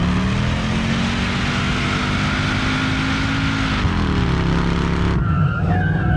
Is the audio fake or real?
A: real